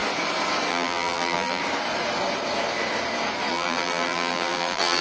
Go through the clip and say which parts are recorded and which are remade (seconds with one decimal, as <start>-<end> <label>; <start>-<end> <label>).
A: 0.0-0.7 recorded; 0.7-1.6 remade; 1.6-3.5 recorded; 3.5-5.0 remade